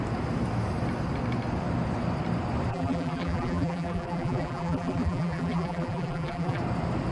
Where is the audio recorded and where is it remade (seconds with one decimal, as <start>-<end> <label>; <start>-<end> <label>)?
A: 0.0-2.7 recorded; 2.7-6.6 remade; 6.6-7.1 recorded